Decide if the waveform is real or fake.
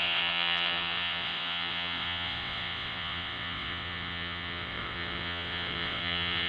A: fake